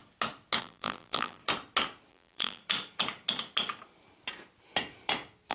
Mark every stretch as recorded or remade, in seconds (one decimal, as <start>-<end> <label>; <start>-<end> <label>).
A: 0.0-0.6 recorded; 0.6-1.4 remade; 1.4-2.1 recorded; 2.1-2.6 remade; 2.6-5.5 recorded